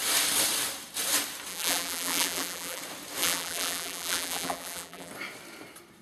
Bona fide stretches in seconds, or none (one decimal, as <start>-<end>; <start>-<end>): 0.0-1.5; 2.8-3.2; 5.1-6.0